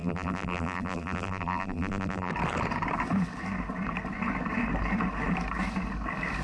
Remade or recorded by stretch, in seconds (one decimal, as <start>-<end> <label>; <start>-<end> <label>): 0.0-2.3 remade; 2.3-6.4 recorded